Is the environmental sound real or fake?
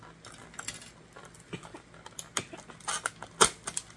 real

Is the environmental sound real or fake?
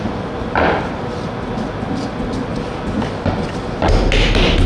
real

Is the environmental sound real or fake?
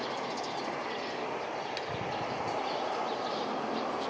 real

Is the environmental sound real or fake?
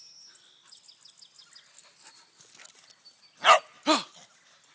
real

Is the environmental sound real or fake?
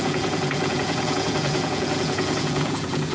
fake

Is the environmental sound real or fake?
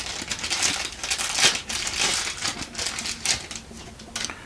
real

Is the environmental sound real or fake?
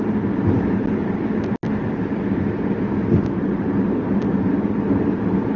real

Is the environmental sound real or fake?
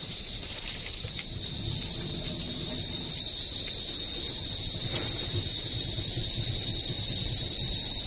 real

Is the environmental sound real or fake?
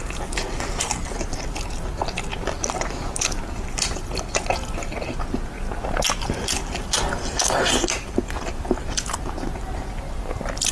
real